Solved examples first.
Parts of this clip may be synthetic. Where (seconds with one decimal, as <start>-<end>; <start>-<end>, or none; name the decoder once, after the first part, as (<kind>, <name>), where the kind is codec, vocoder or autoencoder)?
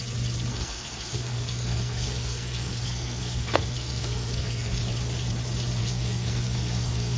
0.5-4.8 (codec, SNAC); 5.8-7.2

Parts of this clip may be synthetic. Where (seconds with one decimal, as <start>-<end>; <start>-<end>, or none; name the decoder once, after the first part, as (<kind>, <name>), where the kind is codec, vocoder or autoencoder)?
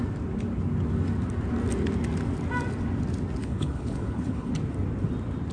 3.4-4.5 (codec, HILCodec)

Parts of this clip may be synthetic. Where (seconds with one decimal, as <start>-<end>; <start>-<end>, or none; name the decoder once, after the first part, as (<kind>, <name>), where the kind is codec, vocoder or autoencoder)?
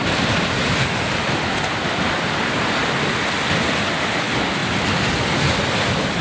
none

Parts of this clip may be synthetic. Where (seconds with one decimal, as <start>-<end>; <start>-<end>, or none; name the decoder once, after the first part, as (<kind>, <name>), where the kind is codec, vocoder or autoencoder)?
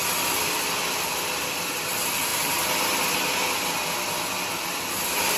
none